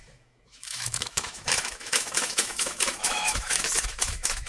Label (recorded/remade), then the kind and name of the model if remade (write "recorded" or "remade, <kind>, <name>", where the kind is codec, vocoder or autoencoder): remade, autoencoder, DAC-VAE